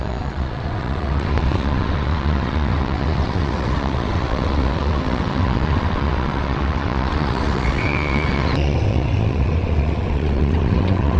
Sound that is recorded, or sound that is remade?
remade